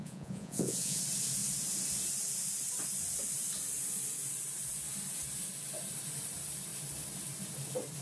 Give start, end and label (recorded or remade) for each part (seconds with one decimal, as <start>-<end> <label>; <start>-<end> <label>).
0.0-1.0 remade; 1.0-8.0 recorded